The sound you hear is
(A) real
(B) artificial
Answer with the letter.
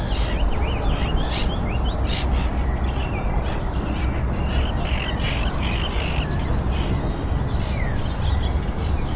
A